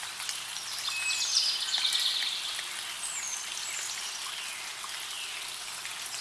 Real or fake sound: real